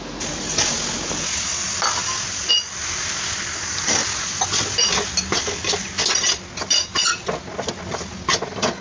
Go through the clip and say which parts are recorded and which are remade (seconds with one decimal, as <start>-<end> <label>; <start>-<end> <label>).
0.0-8.8 recorded

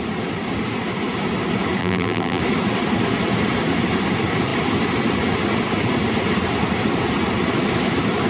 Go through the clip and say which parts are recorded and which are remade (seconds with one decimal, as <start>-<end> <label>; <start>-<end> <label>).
0.0-1.8 recorded; 1.8-2.4 remade; 2.4-8.3 recorded

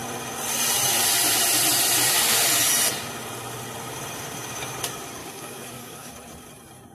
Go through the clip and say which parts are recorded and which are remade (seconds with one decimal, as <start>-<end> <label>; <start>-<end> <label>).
0.0-5.2 recorded; 5.2-6.1 remade; 6.1-6.9 recorded